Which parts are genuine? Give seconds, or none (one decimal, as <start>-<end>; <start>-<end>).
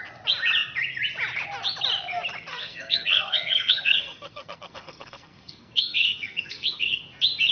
0.0-2.5; 7.0-7.5